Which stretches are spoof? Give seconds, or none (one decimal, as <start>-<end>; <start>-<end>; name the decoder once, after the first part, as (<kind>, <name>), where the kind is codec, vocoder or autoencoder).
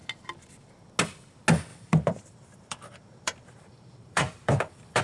1.7-5.0 (vocoder, BigVGAN v2)